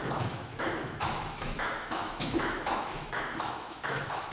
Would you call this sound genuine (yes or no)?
no